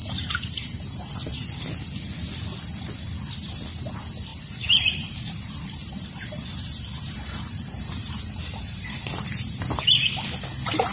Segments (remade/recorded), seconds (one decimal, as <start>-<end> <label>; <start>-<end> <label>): 0.0-1.8 remade; 1.8-4.3 recorded; 4.3-9.6 remade; 9.6-10.9 recorded